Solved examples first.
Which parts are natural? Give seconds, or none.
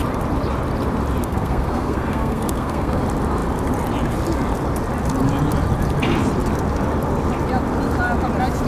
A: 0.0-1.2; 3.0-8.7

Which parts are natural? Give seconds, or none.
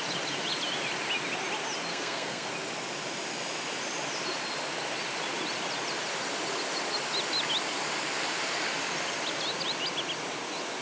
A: 0.0-1.9; 2.5-10.8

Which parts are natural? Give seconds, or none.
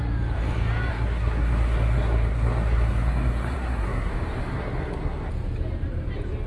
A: 0.0-0.9; 4.1-4.5; 5.3-6.5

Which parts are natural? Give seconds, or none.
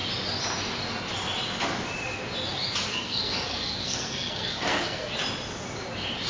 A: 0.0-2.9; 5.1-6.3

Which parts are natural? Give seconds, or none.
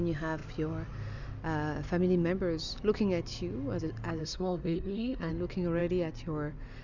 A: 0.0-4.2; 5.3-6.8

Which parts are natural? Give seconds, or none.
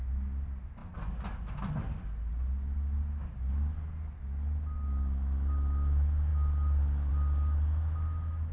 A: 0.0-8.5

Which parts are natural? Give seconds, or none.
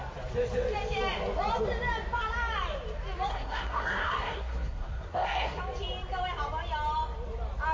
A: 0.0-3.3; 5.6-7.7